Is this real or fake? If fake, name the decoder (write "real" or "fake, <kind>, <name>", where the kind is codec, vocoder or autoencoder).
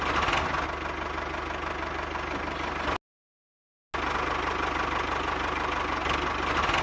real